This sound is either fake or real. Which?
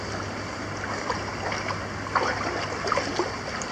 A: real